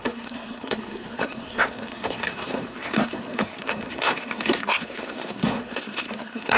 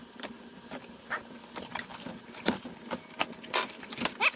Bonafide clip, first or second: second